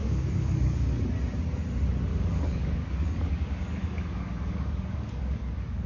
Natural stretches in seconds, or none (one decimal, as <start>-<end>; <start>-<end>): 1.0-2.1